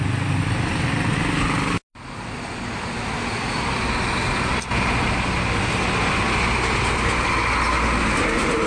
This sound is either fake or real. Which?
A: real